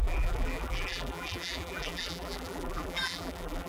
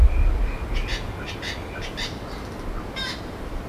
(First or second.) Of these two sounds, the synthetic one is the first